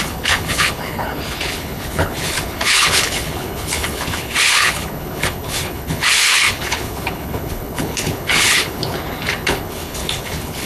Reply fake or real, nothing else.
fake